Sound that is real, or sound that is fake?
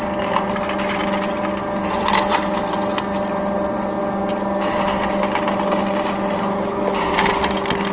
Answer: real